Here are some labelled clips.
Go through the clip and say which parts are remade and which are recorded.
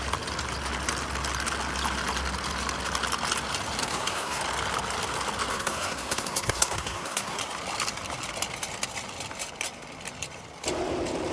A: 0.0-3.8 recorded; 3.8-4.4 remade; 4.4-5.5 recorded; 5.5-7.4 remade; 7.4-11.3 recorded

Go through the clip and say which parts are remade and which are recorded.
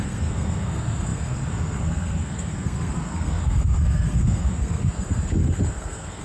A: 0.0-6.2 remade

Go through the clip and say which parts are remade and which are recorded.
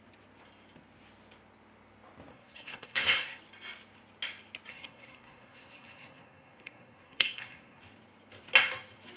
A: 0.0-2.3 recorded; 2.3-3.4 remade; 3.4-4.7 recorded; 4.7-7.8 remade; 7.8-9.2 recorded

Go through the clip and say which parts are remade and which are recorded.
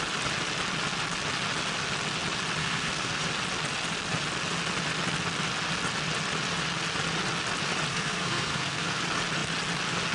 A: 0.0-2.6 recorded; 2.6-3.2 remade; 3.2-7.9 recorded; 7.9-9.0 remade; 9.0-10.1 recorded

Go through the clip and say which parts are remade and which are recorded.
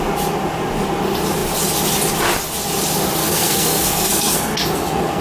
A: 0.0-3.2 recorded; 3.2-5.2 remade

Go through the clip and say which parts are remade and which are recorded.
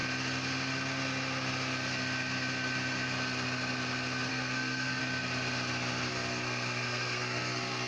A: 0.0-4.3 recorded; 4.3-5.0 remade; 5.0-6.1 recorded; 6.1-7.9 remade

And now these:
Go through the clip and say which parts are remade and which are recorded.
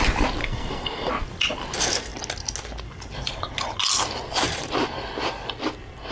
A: 0.0-0.4 recorded; 0.4-1.1 remade; 1.1-6.1 recorded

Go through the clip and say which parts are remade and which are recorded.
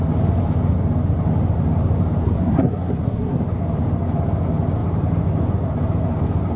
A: 0.0-2.2 recorded; 2.2-3.4 remade; 3.4-6.6 recorded